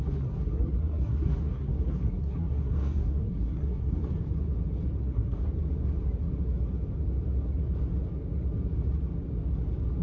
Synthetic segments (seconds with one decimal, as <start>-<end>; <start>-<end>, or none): 0.0-4.0; 5.0-5.4